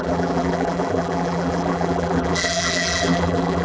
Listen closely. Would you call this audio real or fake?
fake